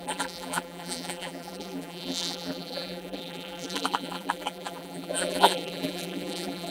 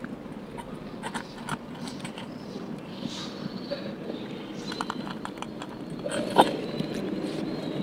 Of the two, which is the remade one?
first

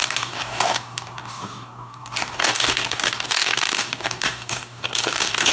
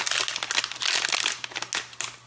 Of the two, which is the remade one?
first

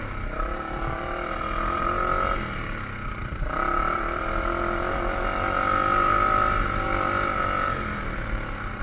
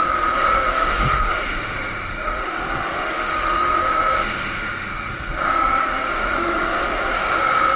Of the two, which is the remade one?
second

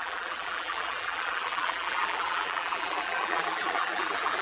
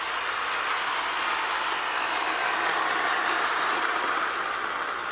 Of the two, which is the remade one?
first